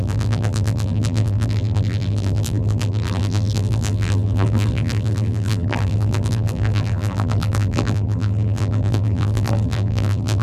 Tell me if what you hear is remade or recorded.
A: remade